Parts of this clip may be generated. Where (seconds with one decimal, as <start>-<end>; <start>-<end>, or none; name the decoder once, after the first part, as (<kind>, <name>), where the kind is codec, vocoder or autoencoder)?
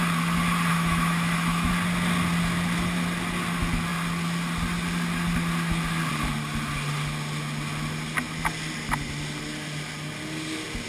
0.7-1.7 (autoencoder, DAC-VAE)